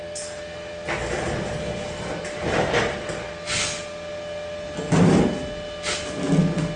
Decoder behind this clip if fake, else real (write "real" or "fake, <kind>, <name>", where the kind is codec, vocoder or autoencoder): real